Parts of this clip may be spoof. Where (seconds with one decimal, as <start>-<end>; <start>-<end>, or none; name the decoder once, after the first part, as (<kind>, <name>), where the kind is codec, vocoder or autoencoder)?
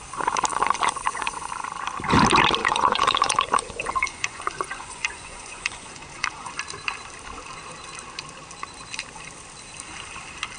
0.5-1.5 (vocoder, Vocos); 2.6-6.6